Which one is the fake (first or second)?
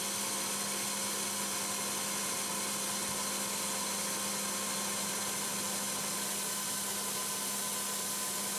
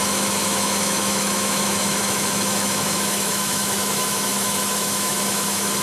second